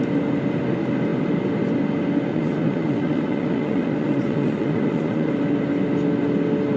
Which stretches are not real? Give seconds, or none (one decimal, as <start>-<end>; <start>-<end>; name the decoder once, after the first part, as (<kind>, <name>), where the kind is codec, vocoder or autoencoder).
2.3-5.3 (vocoder, Vocos)

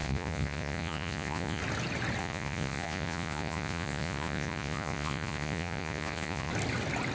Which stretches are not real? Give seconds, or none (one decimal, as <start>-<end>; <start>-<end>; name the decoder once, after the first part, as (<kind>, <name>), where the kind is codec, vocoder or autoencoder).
0.0-1.6 (vocoder, Vocos); 2.2-6.5

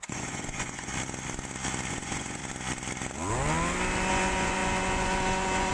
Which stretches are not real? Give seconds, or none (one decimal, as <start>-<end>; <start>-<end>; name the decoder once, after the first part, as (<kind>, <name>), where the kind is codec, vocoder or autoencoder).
0.0-0.9 (vocoder, Vocos); 1.9-2.4; 4.1-5.7

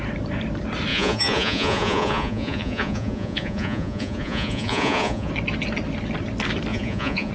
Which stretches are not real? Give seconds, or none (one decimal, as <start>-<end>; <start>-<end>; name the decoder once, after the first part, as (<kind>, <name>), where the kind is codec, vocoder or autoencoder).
0.9-5.3 (vocoder, Vocos); 6.7-7.3